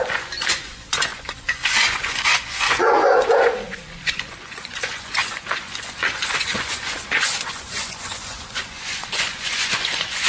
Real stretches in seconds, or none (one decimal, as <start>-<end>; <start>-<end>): none